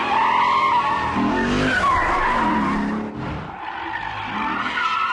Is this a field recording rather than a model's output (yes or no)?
yes